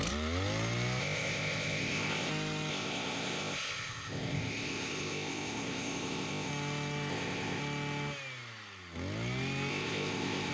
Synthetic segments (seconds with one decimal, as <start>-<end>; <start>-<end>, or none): 1.0-2.3; 2.7-6.5; 7.1-7.6; 9.7-10.5